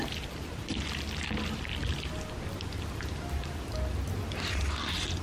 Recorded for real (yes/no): no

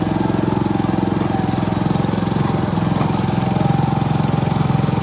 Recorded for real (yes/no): yes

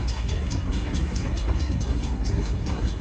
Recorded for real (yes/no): no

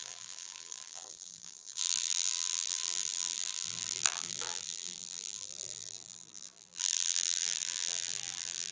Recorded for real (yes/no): no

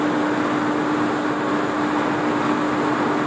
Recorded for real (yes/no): yes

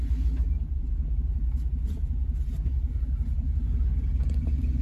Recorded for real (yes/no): no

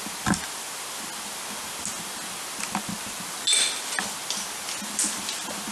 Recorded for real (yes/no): yes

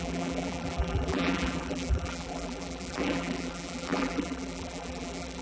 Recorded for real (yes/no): no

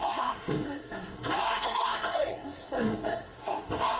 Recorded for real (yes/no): no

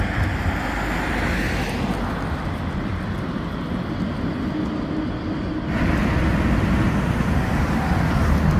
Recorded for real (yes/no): yes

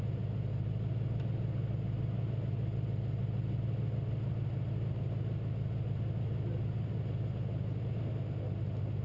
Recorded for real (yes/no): yes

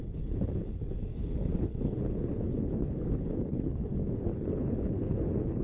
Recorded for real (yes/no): no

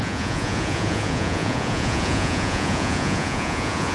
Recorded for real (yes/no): no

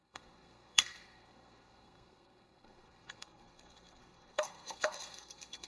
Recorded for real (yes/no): no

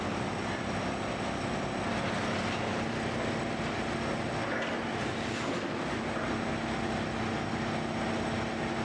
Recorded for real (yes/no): yes